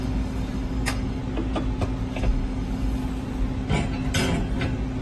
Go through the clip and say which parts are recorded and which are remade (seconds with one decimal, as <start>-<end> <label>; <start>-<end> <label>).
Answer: 0.0-1.2 remade; 1.2-2.1 recorded; 2.1-3.0 remade; 3.0-5.0 recorded